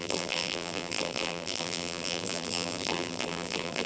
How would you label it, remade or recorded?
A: remade